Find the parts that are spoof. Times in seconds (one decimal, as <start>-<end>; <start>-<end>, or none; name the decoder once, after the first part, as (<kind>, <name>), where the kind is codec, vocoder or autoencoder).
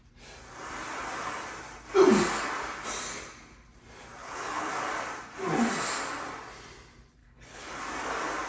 4.2-4.7 (codec, HILCodec); 7.2-7.8